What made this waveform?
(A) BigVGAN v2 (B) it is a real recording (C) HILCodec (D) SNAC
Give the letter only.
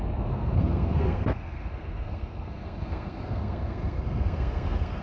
D